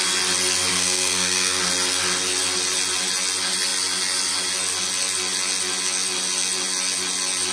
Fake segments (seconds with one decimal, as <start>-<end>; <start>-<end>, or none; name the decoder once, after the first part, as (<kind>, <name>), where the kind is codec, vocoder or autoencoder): 0.7-1.6 (codec, SNAC)

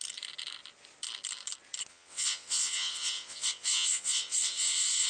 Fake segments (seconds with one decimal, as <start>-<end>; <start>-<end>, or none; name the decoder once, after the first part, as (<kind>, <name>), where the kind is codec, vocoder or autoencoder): 1.9-5.1 (vocoder, WaveNeXt)